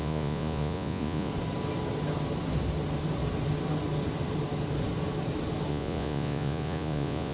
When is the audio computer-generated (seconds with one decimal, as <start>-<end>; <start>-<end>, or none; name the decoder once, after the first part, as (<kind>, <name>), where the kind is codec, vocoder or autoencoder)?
0.0-1.3 (vocoder, Vocos); 5.7-7.3